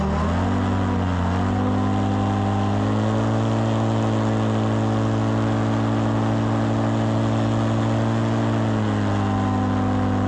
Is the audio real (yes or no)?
yes